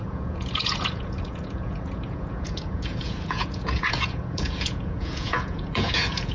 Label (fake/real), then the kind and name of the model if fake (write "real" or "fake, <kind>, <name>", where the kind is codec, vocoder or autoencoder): fake, vocoder, Vocos